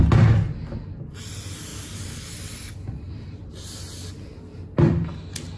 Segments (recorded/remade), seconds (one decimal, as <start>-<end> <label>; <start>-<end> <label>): 0.0-0.4 recorded; 0.4-1.2 remade; 1.2-1.7 recorded; 1.7-3.4 remade; 3.4-4.5 recorded; 4.5-5.1 remade; 5.1-5.6 recorded

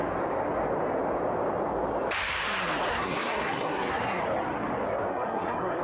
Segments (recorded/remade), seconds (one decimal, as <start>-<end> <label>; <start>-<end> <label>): 0.0-2.9 recorded; 2.9-4.2 remade; 4.2-5.1 recorded; 5.1-5.8 remade

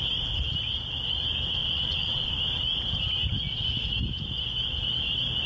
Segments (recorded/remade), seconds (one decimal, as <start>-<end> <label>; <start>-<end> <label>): 0.0-1.6 recorded; 1.6-2.3 remade; 2.3-5.5 recorded

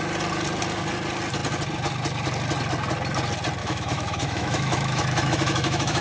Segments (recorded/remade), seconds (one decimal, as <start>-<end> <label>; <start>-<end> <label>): 0.0-3.6 recorded; 3.6-6.0 remade